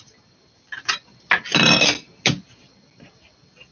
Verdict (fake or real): real